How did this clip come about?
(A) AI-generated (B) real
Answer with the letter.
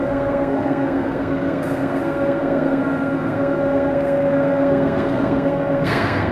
A